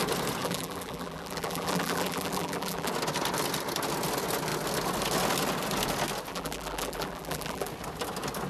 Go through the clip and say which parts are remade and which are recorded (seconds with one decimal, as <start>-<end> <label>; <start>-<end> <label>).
0.0-0.4 recorded; 0.4-2.9 remade; 2.9-6.3 recorded; 6.3-7.7 remade; 7.7-8.5 recorded